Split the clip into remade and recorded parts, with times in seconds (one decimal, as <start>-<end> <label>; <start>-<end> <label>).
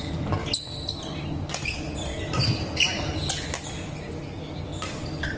0.0-5.4 recorded